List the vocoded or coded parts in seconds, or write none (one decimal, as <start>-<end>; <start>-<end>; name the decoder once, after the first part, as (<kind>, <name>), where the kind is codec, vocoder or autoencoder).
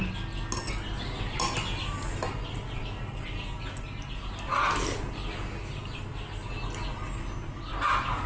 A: none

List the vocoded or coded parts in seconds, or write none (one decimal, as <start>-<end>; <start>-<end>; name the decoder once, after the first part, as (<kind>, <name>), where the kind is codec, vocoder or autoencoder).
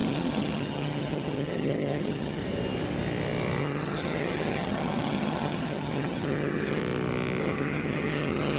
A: 0.0-2.4 (vocoder, HiFi-GAN); 3.6-6.8; 7.4-8.6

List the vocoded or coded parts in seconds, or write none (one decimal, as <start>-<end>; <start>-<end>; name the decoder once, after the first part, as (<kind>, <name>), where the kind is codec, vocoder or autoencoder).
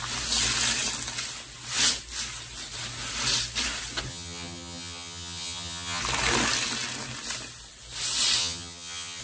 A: 4.1-6.0 (vocoder, HiFi-GAN); 8.4-9.2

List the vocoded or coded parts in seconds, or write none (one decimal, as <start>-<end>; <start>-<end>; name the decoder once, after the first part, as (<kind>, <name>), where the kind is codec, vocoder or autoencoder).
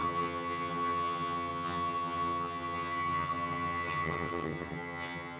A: 0.0-5.4 (vocoder, HiFi-GAN)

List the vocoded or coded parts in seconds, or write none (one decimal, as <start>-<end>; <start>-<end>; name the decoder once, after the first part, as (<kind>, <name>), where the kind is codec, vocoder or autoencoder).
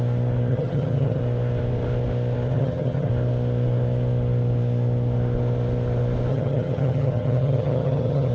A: 0.5-1.2 (vocoder, HiFi-GAN); 2.5-3.1; 6.3-8.3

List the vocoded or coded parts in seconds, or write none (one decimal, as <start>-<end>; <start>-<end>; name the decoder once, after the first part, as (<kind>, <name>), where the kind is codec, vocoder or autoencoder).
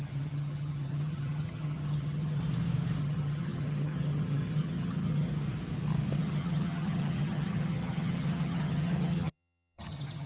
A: 0.0-2.4 (vocoder, HiFi-GAN); 3.0-5.3; 6.2-10.3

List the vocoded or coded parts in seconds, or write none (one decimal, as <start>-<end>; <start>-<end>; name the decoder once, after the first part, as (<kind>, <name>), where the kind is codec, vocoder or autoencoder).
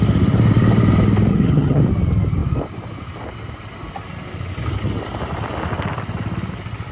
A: 1.3-1.8 (vocoder, HiFi-GAN)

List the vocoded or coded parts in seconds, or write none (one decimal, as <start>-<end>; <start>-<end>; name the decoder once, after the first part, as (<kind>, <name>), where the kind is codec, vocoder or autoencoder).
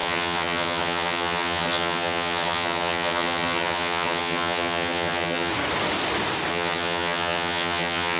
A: 0.0-5.5 (vocoder, HiFi-GAN); 6.5-8.2